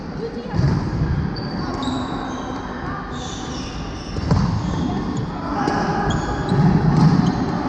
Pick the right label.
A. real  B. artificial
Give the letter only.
A